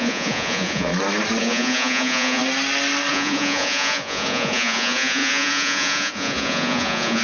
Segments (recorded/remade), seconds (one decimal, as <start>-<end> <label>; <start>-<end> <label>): 0.0-0.9 remade; 0.9-1.4 recorded; 1.4-2.4 remade; 2.4-3.1 recorded; 3.1-7.2 remade